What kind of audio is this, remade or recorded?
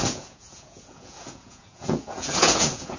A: remade